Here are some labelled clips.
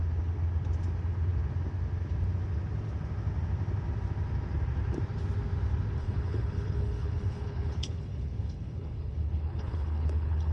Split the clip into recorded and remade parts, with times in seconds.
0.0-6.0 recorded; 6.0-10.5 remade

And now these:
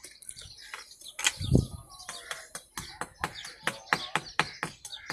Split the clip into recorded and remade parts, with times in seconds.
0.0-5.1 recorded

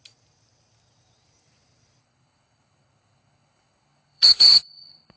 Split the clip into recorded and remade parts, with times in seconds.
0.0-2.0 recorded; 2.0-5.2 remade

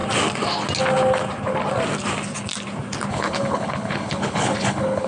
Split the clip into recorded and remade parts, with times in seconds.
0.0-3.1 recorded; 3.1-5.1 remade

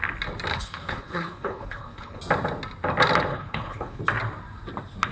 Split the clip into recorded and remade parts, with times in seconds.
0.0-0.5 recorded; 0.5-2.2 remade; 2.2-3.3 recorded; 3.3-4.0 remade; 4.0-5.1 recorded

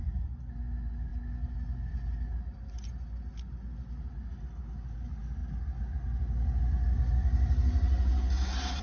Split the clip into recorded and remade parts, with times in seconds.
0.0-8.8 recorded

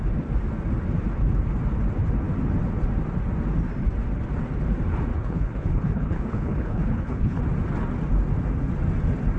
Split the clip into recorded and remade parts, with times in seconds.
0.0-5.1 recorded; 5.1-7.4 remade; 7.4-9.4 recorded